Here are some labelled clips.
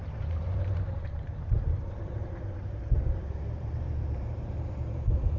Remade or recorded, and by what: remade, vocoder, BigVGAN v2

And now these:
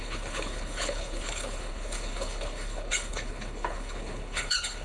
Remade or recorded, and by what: remade, codec, HILCodec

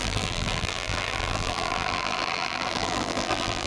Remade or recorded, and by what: remade, vocoder, BigVGAN v2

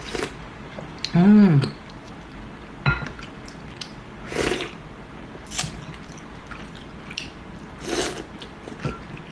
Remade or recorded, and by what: recorded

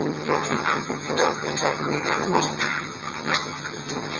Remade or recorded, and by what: remade, vocoder, HiFi-GAN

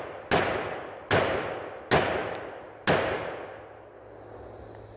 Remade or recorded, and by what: recorded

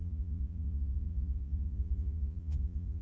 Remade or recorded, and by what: remade, vocoder, Vocos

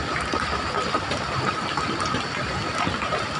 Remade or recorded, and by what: recorded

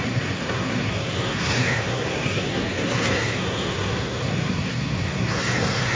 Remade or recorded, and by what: remade, codec, SNAC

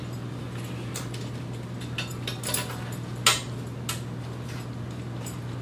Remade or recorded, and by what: recorded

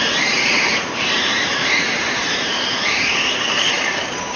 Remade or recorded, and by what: remade, vocoder, BigVGAN v2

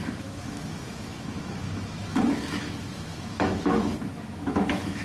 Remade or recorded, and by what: remade, autoencoder, DAC-VAE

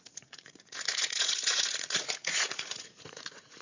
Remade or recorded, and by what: remade, vocoder, Vocos